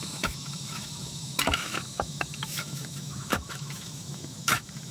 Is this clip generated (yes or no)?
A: yes